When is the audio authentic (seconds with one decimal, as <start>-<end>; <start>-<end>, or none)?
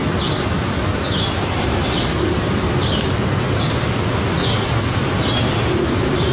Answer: 0.0-6.3